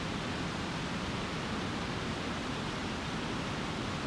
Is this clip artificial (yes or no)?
no